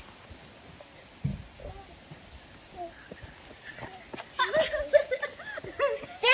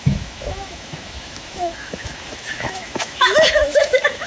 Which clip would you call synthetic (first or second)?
second